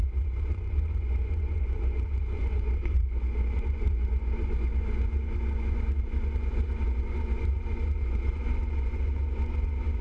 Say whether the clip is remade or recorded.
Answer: remade